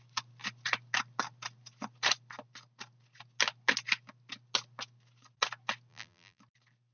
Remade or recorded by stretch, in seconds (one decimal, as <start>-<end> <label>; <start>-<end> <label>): 0.0-5.9 recorded; 5.9-6.4 remade; 6.4-6.9 recorded